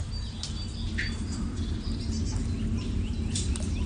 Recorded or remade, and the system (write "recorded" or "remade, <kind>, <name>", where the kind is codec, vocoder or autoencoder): recorded